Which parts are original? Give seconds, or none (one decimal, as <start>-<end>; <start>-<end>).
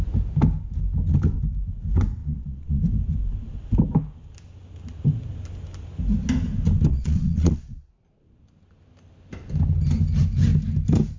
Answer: 0.0-2.2; 2.8-6.9; 7.9-11.2